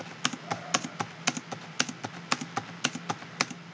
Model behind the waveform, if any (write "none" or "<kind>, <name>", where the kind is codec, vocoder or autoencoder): none